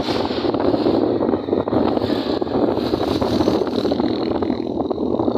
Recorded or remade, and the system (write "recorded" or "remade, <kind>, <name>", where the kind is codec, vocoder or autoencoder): recorded